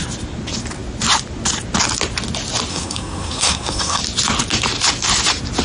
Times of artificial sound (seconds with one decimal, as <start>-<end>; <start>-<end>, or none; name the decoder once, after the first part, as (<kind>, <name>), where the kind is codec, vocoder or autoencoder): 2.7-4.0 (codec, SNAC)